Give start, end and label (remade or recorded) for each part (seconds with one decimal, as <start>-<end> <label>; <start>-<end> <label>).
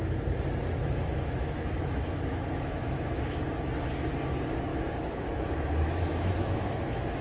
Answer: 0.0-0.8 recorded; 0.8-3.2 remade; 3.2-4.7 recorded; 4.7-7.2 remade